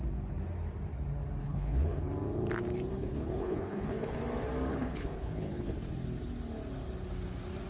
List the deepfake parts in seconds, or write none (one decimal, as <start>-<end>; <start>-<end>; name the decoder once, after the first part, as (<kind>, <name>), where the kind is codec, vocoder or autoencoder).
1.4-2.0 (codec, HILCodec); 2.9-4.2; 4.7-5.9